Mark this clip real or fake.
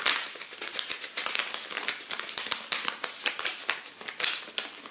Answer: real